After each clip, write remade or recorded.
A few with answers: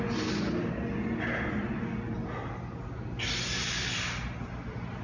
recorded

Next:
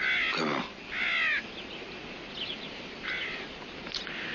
recorded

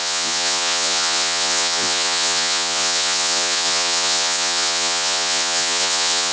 remade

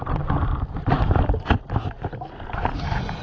recorded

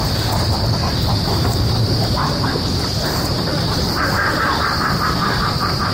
remade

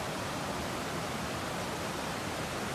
recorded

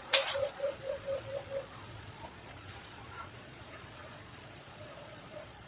remade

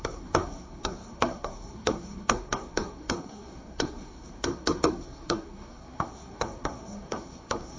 remade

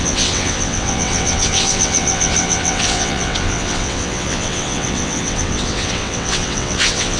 remade